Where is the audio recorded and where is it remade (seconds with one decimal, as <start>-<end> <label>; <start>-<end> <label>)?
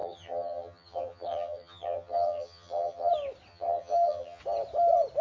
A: 0.0-3.1 remade; 3.1-3.5 recorded; 3.5-4.4 remade; 4.4-5.2 recorded